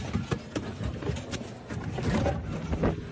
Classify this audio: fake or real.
real